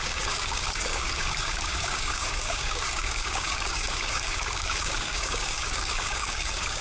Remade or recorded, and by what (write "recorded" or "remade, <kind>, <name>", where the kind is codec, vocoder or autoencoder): remade, codec, DAC